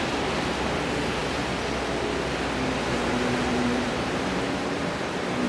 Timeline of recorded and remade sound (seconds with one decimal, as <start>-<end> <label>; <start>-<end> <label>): 0.0-3.5 recorded; 3.5-4.8 remade; 4.8-5.5 recorded